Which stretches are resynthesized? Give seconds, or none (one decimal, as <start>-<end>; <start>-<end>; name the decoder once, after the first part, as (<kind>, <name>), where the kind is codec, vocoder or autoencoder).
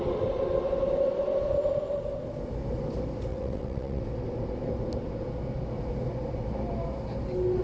3.3-4.0 (vocoder, WaveNeXt)